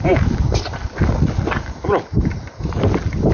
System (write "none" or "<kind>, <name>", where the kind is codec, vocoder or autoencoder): none